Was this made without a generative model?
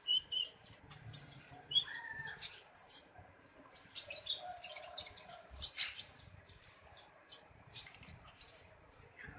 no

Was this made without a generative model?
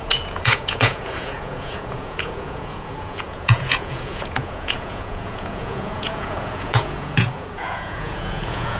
no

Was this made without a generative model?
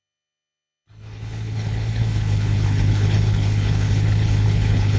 no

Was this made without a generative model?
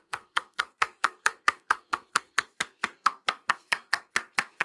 no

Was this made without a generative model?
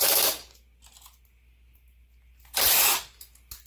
yes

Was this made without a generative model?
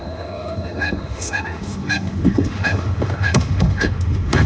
no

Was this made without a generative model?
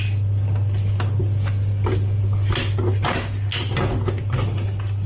yes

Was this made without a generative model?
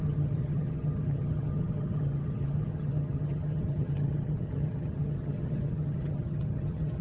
no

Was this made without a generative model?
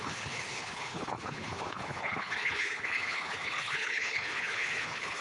no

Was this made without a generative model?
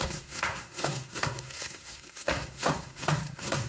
no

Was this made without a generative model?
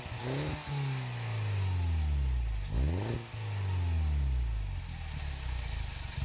yes